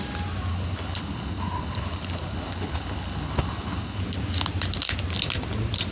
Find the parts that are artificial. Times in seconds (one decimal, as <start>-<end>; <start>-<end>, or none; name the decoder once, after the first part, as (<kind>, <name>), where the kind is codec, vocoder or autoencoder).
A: 0.5-4.0 (codec, HILCodec)